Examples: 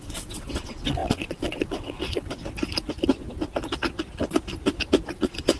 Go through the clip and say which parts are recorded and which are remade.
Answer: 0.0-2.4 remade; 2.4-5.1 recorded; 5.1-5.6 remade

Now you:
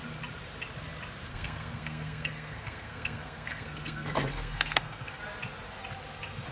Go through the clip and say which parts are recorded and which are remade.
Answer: 0.0-1.3 recorded; 1.3-5.2 remade; 5.2-6.5 recorded